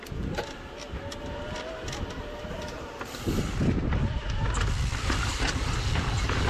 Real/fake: real